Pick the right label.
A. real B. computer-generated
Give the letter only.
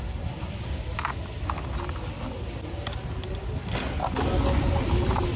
A